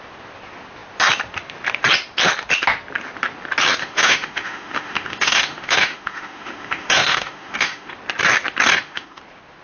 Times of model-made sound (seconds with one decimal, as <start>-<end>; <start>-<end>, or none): 3.8-7.9; 8.7-9.2